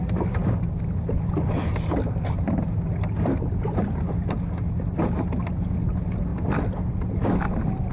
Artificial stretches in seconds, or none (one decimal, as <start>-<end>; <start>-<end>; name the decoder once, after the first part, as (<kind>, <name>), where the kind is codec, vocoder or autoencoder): none